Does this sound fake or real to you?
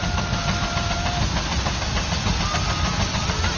real